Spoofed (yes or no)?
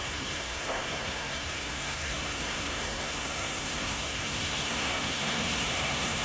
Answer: yes